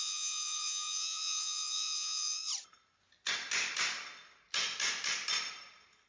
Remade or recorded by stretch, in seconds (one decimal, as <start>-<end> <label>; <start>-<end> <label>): 0.0-2.5 remade; 2.5-6.1 recorded